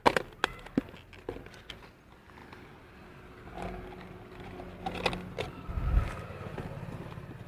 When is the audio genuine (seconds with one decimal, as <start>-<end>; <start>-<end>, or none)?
0.0-7.5